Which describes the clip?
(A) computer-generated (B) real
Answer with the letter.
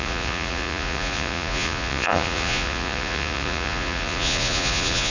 A